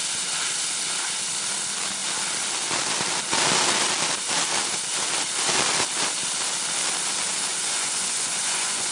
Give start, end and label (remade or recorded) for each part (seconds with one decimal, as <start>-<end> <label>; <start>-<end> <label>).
0.0-7.5 recorded; 7.5-8.9 remade